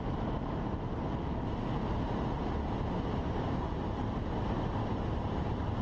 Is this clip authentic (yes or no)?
yes